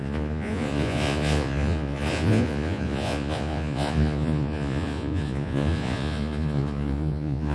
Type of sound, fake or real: fake